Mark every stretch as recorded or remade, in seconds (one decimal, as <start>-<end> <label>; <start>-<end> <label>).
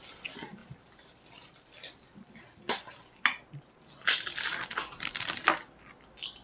0.0-0.6 recorded; 0.6-2.9 remade; 2.9-6.4 recorded